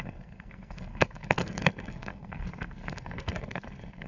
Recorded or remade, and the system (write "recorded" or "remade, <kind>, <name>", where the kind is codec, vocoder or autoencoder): remade, codec, SNAC